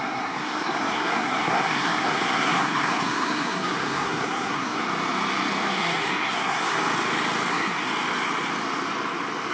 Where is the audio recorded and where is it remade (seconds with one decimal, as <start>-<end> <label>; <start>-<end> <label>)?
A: 0.0-4.8 remade; 4.8-5.7 recorded; 5.7-6.8 remade; 6.8-7.5 recorded; 7.5-7.9 remade; 7.9-9.5 recorded